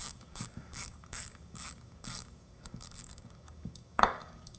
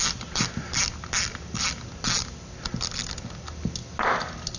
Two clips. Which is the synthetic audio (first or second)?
first